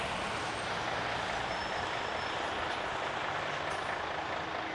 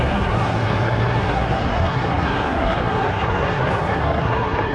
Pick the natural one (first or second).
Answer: first